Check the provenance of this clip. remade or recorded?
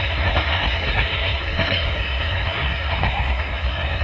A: remade